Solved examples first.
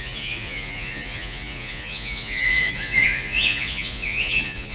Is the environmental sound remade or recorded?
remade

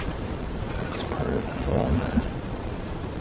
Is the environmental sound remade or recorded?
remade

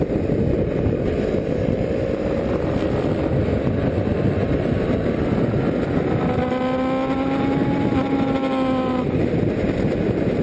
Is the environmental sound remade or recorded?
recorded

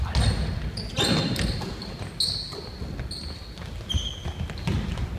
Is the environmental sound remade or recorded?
recorded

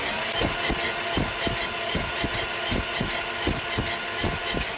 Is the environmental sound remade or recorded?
recorded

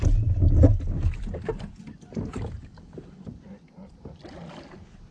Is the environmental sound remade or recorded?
recorded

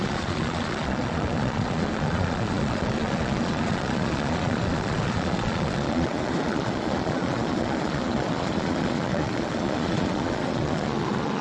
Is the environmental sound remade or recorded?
remade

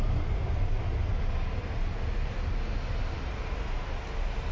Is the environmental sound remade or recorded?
recorded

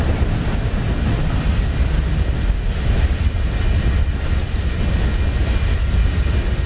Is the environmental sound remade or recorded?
recorded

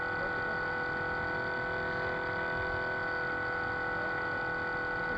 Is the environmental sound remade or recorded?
recorded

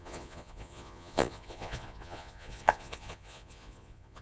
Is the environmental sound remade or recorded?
remade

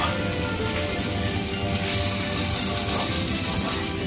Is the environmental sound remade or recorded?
recorded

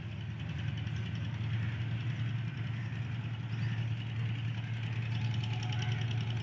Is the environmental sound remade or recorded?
recorded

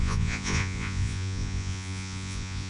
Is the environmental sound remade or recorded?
remade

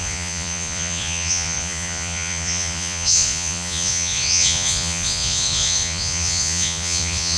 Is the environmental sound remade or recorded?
remade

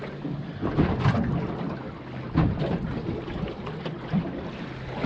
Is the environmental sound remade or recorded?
recorded